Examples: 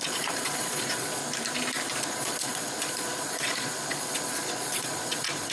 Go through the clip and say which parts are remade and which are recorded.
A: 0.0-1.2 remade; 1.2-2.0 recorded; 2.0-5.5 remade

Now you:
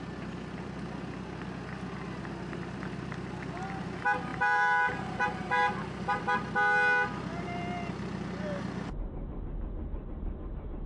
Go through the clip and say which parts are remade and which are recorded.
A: 0.0-4.3 recorded; 4.3-6.2 remade; 6.2-10.9 recorded

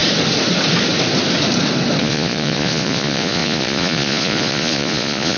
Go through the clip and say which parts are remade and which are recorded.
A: 0.0-2.0 recorded; 2.0-5.4 remade

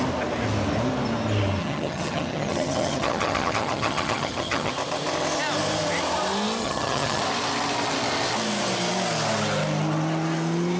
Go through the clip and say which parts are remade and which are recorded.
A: 0.0-1.6 recorded; 1.6-4.7 remade; 4.7-6.6 recorded; 6.6-7.2 remade; 7.2-10.8 recorded

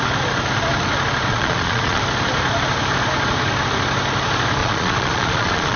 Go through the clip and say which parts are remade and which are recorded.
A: 0.0-1.3 recorded; 1.3-2.0 remade; 2.0-4.6 recorded; 4.6-5.8 remade